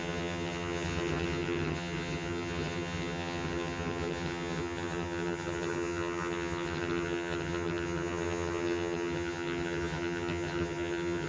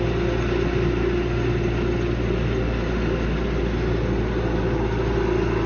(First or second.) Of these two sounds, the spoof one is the first